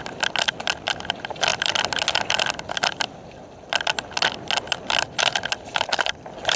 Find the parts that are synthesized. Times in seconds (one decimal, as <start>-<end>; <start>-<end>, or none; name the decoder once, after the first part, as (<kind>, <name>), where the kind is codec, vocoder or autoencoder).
none